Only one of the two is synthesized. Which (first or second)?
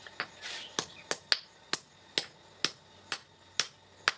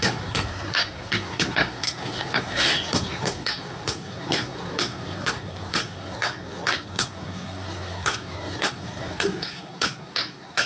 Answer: second